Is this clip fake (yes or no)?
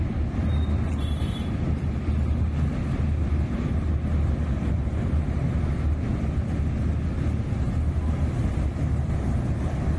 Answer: no